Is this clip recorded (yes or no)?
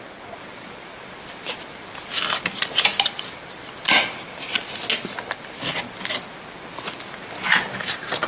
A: yes